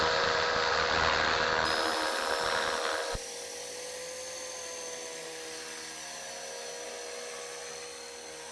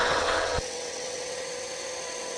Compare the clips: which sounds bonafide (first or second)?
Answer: first